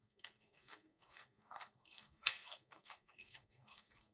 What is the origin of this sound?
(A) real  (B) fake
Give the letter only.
B